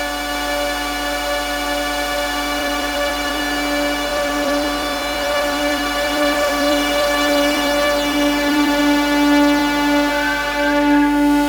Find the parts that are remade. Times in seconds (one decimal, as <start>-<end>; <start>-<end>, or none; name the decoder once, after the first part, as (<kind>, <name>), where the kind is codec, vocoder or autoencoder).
2.6-3.4 (vocoder, BigVGAN v2); 4.1-8.8